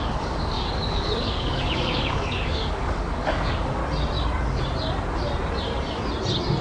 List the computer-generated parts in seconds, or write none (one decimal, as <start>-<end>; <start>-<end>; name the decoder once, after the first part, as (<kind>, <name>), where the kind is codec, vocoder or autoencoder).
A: 0.0-3.8 (codec, DAC)